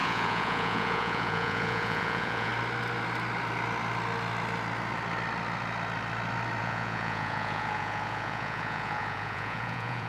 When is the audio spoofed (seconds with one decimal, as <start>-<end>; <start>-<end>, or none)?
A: 0.0-2.5; 6.6-10.1